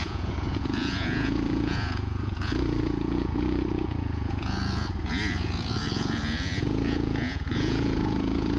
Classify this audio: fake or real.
fake